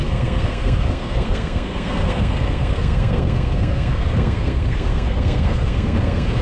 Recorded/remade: remade